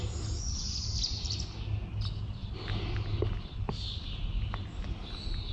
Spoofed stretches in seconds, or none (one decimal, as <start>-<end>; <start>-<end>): none